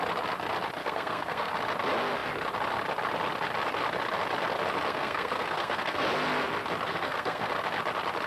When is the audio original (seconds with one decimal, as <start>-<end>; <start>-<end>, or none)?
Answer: 0.0-0.8; 1.5-4.9; 6.0-6.9; 7.5-8.3